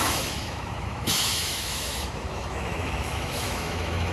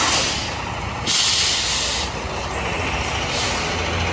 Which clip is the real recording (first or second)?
second